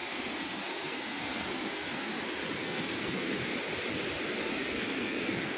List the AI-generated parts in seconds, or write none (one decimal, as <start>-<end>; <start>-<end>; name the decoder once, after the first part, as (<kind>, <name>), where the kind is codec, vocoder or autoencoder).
0.0-2.1 (codec, SNAC); 2.6-3.5; 4.5-5.6